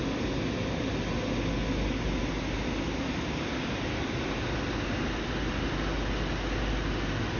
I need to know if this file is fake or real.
real